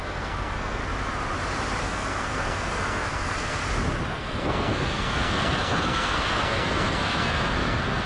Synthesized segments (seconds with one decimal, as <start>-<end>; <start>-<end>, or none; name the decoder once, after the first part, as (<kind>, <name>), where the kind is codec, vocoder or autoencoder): 0.0-0.8 (codec, SNAC); 1.8-3.6; 4.1-8.1